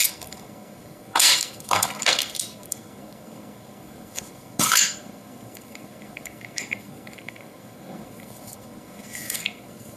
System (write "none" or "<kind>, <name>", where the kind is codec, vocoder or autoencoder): codec, SNAC